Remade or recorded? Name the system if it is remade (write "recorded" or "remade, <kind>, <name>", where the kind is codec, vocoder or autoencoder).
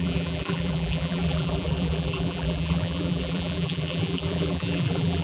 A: remade, vocoder, BigVGAN v2